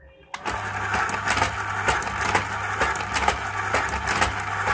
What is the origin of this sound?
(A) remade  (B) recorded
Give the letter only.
B